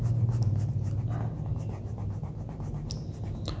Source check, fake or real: real